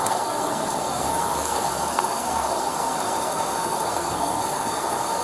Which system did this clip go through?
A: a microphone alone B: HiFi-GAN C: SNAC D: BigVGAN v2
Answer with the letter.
C